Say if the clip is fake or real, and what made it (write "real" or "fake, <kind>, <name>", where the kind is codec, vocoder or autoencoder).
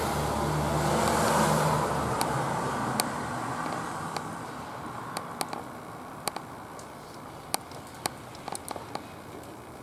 real